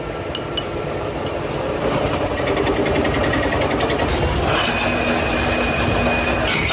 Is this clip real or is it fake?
real